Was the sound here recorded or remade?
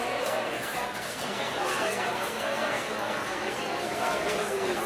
remade